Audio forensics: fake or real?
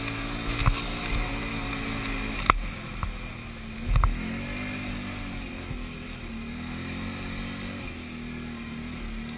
real